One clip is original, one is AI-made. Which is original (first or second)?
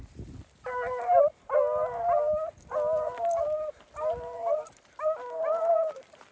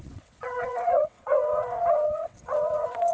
first